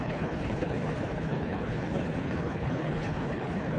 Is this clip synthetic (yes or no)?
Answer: yes